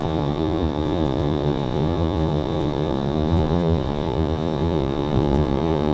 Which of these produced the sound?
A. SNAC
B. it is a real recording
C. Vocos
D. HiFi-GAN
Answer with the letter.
C